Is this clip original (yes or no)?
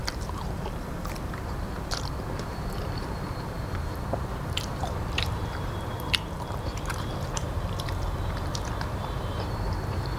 no